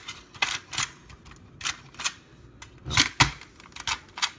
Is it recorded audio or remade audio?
recorded